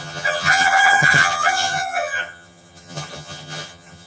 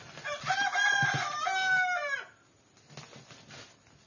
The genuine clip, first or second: second